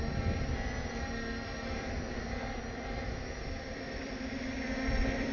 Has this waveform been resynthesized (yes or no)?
yes